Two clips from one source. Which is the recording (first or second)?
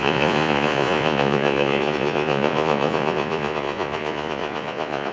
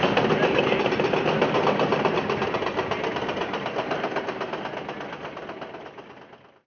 second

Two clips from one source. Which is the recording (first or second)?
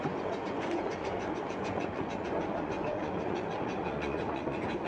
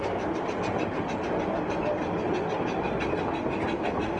second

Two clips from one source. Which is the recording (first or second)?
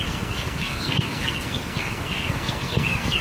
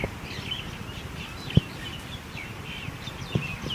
second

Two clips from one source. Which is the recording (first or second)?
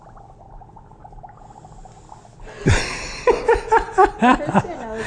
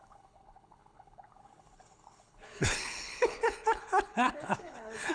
first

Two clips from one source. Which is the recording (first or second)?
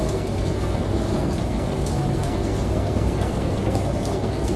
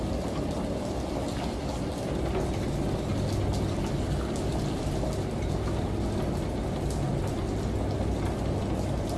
second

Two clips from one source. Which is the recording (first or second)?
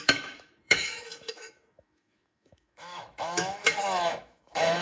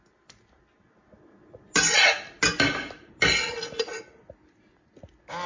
second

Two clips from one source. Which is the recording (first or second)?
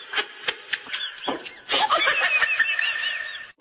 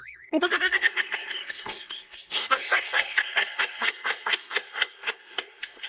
first